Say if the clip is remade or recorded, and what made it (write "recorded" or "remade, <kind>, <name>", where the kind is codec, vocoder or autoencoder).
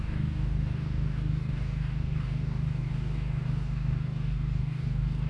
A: remade, codec, DAC